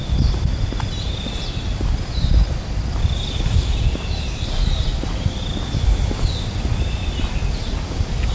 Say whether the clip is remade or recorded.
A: recorded